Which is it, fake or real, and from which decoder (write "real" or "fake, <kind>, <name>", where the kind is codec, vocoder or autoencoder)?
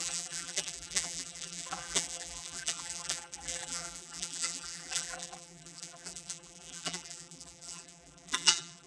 fake, vocoder, BigVGAN v2